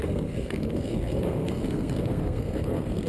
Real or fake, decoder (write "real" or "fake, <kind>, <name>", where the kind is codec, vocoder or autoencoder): fake, codec, SNAC